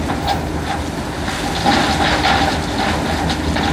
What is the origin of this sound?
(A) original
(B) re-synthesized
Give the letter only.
A